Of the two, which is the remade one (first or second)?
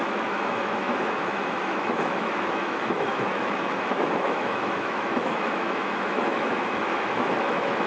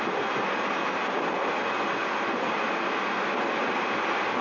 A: first